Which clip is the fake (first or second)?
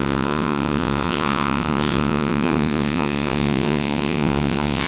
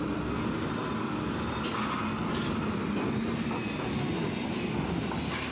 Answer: first